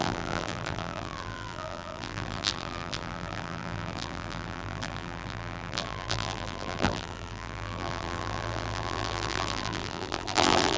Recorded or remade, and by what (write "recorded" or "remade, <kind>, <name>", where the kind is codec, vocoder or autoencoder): remade, vocoder, BigVGAN v2